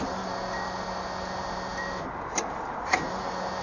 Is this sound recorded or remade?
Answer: recorded